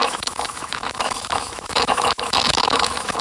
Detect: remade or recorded remade